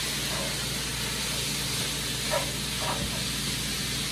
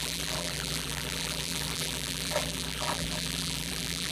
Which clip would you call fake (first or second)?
second